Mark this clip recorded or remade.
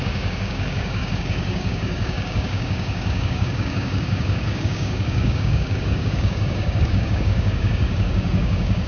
remade